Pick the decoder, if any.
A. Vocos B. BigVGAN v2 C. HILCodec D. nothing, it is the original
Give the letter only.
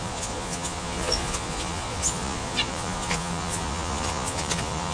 A